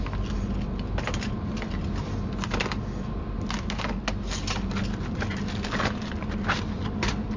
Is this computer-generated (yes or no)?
no